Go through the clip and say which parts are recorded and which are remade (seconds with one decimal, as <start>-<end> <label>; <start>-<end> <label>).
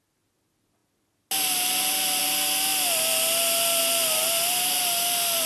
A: 0.0-5.5 recorded